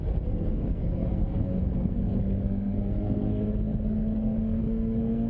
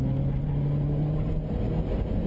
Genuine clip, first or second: second